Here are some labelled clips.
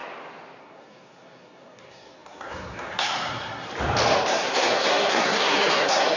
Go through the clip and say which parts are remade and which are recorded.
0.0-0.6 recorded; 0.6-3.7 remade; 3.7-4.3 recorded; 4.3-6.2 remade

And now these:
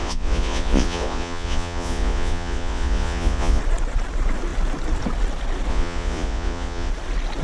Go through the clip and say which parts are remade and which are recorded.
0.0-3.6 remade; 3.6-5.7 recorded; 5.7-6.9 remade; 6.9-7.4 recorded

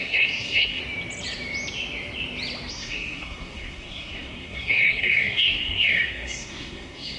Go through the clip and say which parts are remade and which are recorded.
0.0-0.8 remade; 0.8-2.7 recorded; 2.7-7.2 remade

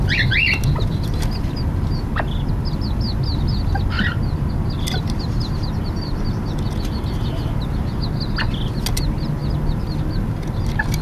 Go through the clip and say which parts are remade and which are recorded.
0.0-11.0 recorded